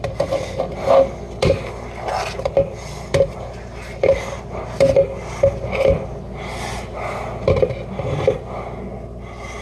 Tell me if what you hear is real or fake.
real